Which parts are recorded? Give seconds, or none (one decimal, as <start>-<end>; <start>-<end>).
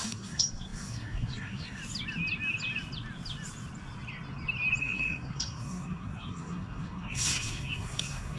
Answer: 1.8-4.8